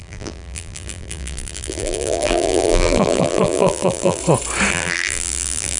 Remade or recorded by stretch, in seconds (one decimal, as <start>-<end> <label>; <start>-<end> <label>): 0.0-4.2 remade; 4.2-4.7 recorded; 4.7-5.8 remade